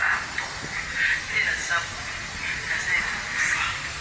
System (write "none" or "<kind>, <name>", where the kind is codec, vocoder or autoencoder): none